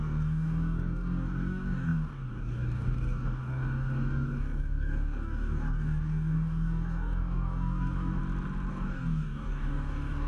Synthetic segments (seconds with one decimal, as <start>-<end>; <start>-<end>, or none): 0.0-8.2; 8.7-10.3